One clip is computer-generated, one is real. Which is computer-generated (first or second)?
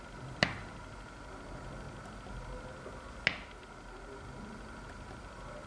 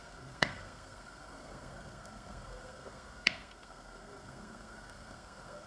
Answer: second